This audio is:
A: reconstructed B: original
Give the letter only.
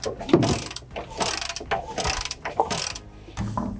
B